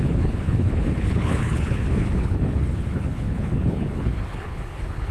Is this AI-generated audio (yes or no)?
yes